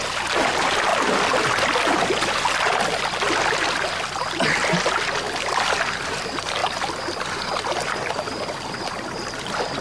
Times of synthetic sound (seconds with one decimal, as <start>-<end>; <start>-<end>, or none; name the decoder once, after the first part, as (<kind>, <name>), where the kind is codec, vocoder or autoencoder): 0.0-0.9 (vocoder, BigVGAN v2); 5.5-6.6